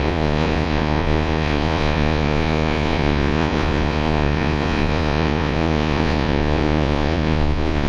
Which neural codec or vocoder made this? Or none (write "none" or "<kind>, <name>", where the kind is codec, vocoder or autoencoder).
vocoder, Vocos